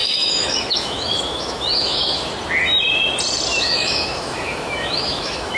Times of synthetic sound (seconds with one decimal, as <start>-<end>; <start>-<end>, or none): 0.0-2.3; 3.5-5.6